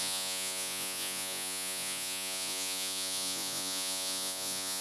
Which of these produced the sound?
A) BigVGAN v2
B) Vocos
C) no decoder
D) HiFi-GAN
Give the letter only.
B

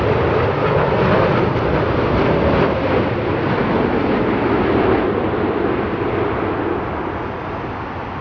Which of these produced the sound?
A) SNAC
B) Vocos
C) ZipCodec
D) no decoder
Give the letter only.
D